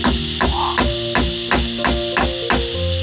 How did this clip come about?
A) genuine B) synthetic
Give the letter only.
A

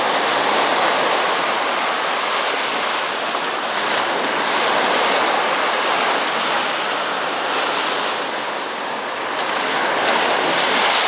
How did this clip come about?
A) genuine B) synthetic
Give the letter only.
A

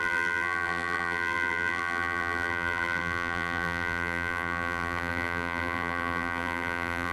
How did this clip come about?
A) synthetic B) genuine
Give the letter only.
A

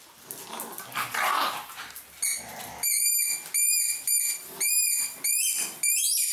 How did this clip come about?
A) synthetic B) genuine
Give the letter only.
B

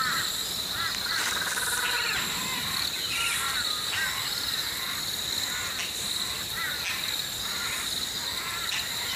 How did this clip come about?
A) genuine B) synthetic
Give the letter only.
A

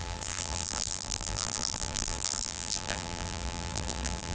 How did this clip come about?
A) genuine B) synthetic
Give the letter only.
B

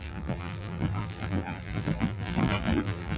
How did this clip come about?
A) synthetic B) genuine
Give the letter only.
A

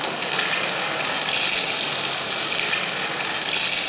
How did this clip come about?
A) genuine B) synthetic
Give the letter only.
A